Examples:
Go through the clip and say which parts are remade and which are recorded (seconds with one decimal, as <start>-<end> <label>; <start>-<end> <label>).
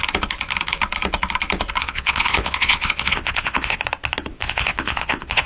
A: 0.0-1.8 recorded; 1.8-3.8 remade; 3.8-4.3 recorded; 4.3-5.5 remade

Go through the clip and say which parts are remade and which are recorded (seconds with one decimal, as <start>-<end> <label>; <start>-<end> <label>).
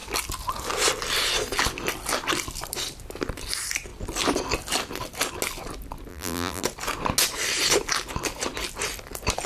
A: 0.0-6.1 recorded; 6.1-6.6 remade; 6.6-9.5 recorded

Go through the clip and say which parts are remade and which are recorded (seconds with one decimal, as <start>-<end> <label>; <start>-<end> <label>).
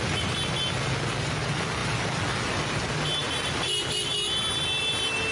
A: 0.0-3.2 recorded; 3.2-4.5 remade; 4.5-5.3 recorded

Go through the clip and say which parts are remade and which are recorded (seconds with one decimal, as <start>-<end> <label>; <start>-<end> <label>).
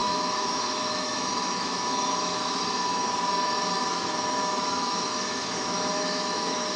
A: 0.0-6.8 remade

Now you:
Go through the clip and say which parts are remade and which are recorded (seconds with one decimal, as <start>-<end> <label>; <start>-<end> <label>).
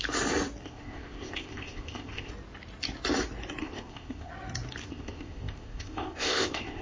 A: 0.0-0.6 recorded; 0.6-2.3 remade; 2.3-3.6 recorded; 3.6-4.3 remade; 4.3-4.8 recorded; 4.8-6.8 remade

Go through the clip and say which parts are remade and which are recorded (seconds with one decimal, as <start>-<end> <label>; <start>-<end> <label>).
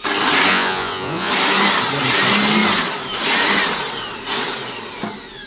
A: 0.0-0.5 recorded; 0.5-1.3 remade; 1.3-5.5 recorded